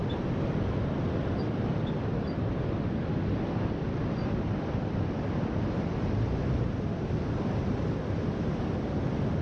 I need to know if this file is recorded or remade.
recorded